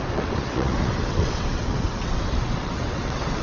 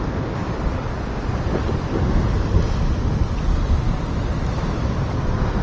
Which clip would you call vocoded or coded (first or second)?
first